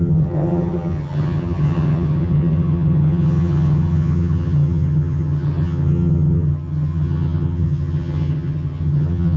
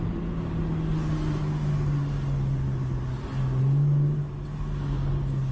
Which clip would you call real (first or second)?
second